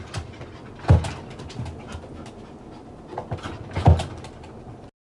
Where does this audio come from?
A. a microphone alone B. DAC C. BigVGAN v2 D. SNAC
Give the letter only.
A